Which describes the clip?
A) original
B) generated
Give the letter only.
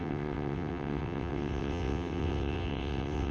B